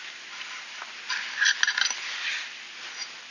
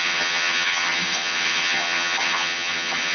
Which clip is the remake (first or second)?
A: second